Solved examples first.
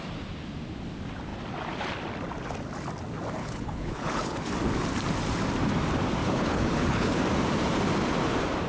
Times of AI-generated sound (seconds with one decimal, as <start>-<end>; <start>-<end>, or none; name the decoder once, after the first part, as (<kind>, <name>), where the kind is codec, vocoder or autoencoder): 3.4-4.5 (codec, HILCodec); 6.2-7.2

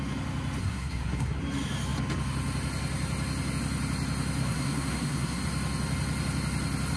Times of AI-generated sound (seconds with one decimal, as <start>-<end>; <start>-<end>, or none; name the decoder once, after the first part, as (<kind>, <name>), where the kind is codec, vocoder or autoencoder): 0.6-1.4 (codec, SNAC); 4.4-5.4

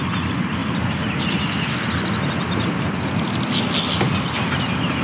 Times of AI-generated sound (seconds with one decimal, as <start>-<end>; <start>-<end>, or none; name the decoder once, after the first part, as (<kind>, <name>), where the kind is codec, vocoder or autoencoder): none